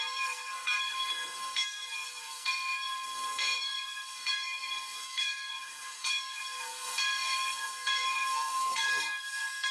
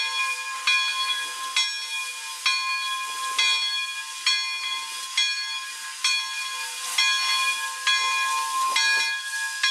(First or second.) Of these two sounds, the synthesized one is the first